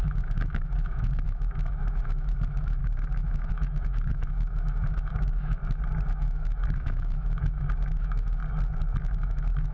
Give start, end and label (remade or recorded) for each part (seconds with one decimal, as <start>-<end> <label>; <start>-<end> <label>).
0.0-5.6 remade; 5.6-6.1 recorded; 6.1-8.4 remade; 8.4-9.0 recorded; 9.0-9.7 remade